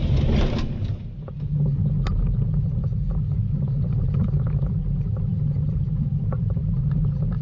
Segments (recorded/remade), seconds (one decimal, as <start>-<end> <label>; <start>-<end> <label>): 0.0-5.3 recorded; 5.3-6.2 remade; 6.2-7.4 recorded